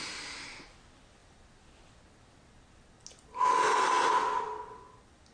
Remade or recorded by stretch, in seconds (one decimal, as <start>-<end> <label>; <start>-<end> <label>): 0.0-5.3 recorded